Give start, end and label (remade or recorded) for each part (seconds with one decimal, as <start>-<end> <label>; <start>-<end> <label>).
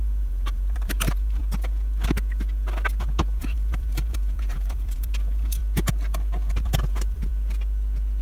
0.0-1.4 remade; 1.4-3.4 recorded; 3.4-5.6 remade; 5.6-6.5 recorded; 6.5-7.3 remade; 7.3-8.2 recorded